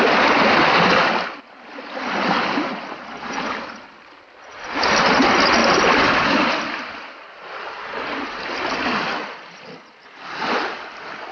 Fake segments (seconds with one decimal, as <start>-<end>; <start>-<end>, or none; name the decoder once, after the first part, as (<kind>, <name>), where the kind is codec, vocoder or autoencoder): 5.6-10.2 (vocoder, BigVGAN v2)